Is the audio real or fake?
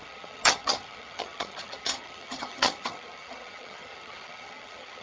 fake